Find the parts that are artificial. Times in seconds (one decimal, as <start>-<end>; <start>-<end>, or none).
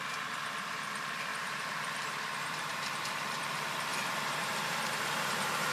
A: 1.3-3.2; 3.9-5.7